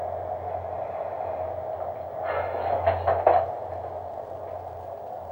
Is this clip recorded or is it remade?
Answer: recorded